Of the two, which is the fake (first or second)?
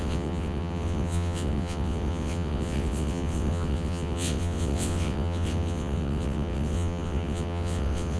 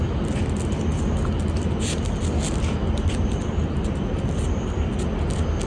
first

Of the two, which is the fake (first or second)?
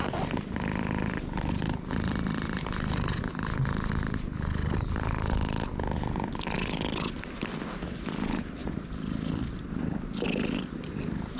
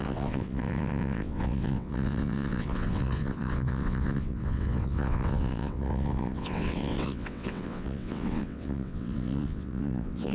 second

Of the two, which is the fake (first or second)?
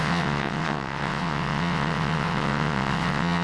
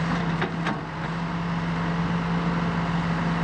first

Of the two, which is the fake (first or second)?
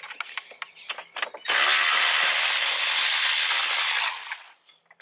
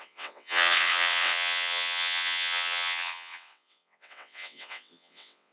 second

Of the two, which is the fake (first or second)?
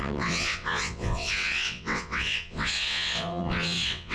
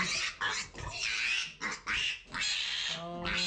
first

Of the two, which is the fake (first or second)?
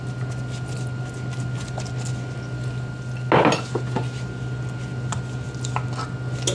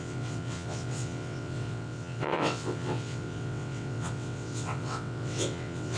second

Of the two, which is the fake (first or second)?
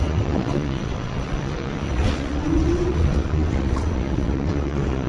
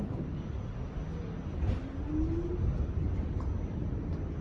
first